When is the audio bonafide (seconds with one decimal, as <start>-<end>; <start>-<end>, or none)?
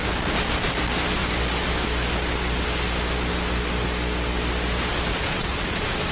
0.0-5.1